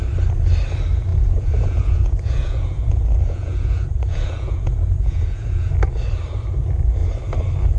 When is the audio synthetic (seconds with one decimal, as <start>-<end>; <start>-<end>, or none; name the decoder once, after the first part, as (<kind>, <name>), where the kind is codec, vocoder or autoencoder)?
1.1-5.7 (vocoder, Vocos)